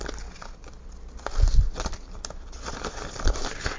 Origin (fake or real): real